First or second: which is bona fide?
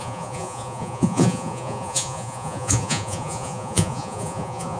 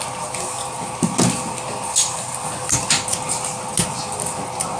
second